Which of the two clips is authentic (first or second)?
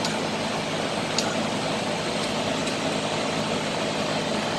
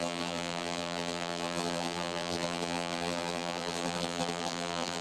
first